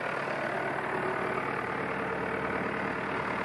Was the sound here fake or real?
real